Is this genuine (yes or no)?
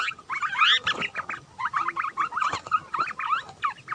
yes